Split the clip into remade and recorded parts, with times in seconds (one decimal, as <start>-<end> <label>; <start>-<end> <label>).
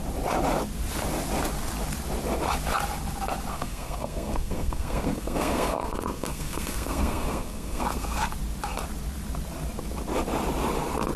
0.0-3.5 recorded; 3.5-8.3 remade; 8.3-11.2 recorded